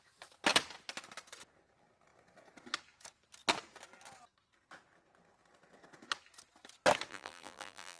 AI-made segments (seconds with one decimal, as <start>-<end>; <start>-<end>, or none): 7.1-8.0